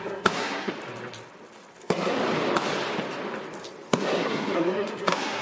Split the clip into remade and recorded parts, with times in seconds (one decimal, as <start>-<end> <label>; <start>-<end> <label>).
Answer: 0.0-0.7 remade; 0.7-1.8 recorded; 1.8-2.2 remade; 2.2-3.9 recorded; 3.9-5.4 remade